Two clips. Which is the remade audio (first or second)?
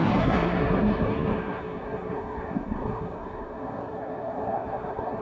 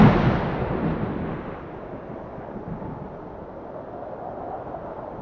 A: first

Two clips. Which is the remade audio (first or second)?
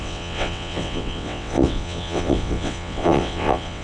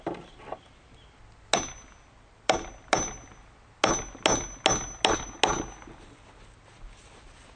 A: first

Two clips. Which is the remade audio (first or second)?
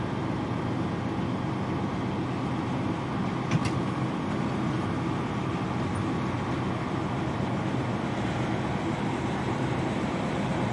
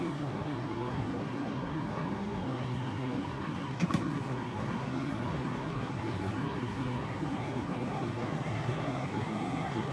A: second